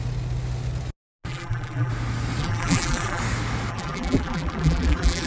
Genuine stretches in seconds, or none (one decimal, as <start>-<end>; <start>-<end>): 0.0-1.3; 1.9-2.4; 3.2-3.7